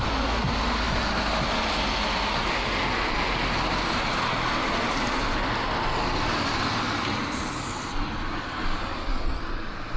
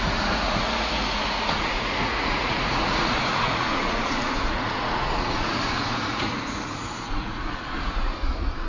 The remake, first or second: second